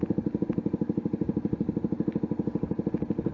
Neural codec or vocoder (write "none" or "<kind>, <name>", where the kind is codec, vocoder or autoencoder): none